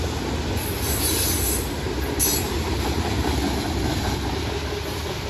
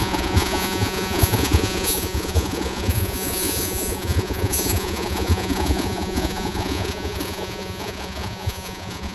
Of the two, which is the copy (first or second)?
second